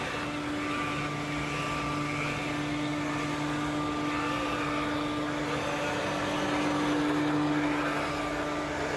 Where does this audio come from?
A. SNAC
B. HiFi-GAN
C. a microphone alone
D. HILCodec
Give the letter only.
C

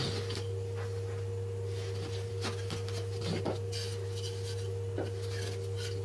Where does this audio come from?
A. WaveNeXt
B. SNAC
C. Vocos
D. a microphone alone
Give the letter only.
D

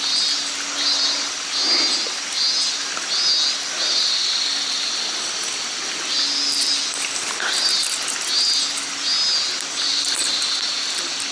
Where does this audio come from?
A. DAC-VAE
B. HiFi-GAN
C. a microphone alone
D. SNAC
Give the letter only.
C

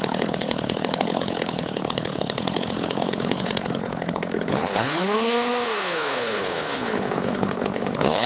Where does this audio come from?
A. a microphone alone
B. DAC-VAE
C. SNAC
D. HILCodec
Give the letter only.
D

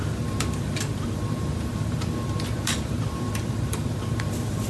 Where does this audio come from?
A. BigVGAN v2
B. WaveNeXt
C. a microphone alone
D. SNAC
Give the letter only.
A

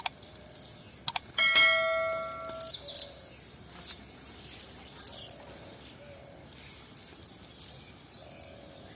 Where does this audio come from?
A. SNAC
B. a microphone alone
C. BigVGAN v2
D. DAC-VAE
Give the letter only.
B